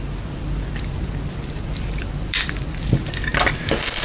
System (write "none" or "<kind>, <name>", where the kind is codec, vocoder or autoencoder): vocoder, BigVGAN v2